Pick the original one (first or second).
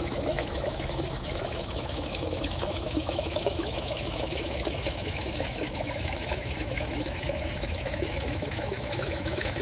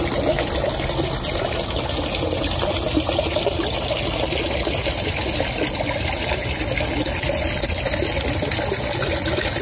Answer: second